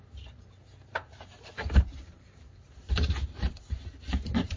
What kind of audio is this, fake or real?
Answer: fake